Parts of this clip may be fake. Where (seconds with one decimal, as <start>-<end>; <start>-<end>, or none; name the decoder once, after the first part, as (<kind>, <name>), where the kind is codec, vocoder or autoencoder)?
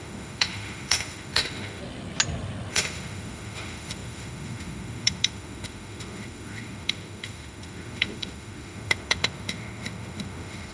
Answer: 0.0-1.8 (autoencoder, DAC-VAE); 2.7-10.7